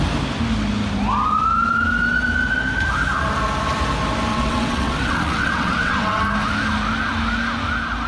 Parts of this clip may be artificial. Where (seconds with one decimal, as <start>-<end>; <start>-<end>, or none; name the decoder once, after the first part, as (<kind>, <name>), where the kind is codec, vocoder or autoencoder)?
4.3-6.2 (vocoder, WaveNeXt)